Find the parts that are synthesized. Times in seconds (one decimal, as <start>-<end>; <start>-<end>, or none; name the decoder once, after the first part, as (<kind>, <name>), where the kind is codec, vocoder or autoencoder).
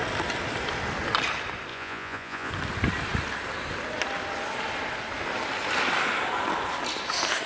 1.7-2.5 (vocoder, Vocos)